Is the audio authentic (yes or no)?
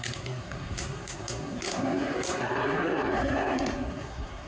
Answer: no